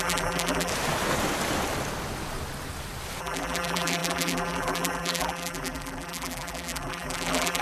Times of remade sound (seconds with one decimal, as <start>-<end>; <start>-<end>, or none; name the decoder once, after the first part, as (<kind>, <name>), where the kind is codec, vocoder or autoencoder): 0.0-0.7 (vocoder, BigVGAN v2); 3.2-7.6